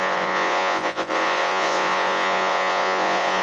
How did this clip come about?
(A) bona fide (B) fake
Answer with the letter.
B